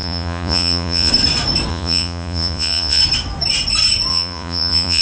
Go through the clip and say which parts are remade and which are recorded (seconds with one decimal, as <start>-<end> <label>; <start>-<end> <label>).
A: 0.0-1.1 remade; 1.1-1.7 recorded; 1.7-3.0 remade; 3.0-4.1 recorded; 4.1-5.0 remade